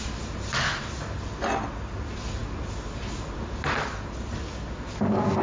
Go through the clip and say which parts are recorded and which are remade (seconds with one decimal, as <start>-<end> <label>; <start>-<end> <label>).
0.0-5.4 recorded